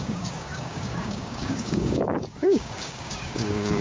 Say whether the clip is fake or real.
fake